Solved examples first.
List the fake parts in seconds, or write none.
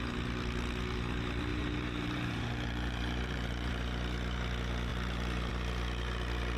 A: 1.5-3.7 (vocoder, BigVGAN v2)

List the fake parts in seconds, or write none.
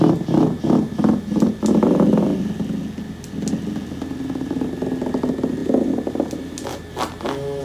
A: none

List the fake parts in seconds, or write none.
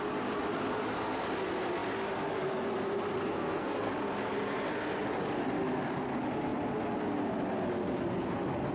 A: 3.3-3.9 (codec, SNAC)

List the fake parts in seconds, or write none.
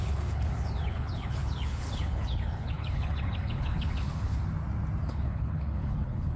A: 0.0-4.4 (codec, HILCodec); 5.1-6.4